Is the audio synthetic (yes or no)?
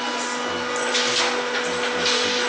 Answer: no